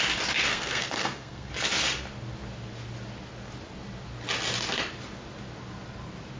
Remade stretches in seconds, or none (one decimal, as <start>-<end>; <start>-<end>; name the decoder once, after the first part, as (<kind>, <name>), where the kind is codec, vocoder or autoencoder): 0.5-1.5 (codec, SNAC)